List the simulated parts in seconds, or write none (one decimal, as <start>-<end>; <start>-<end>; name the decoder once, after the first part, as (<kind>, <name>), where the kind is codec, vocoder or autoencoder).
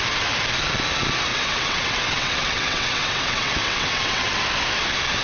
1.3-4.4 (vocoder, WaveNeXt)